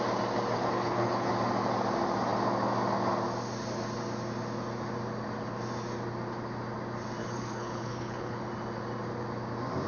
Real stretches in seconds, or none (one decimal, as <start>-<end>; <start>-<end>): 0.0-0.7; 1.3-7.2; 8.4-9.9

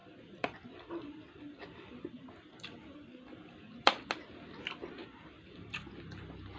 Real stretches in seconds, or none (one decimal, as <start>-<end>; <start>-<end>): 4.0-5.0; 5.9-6.6

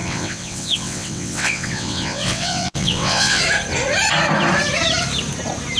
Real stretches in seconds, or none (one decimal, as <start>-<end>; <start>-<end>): 3.4-5.8